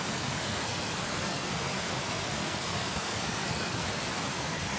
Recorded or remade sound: remade